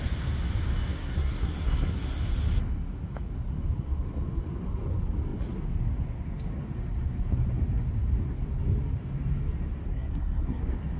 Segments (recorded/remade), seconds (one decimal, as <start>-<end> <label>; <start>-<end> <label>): 0.0-0.9 recorded; 0.9-2.2 remade; 2.2-9.9 recorded; 9.9-10.6 remade; 10.6-11.0 recorded